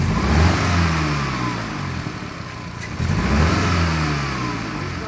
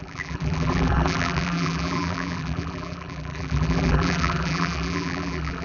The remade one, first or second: second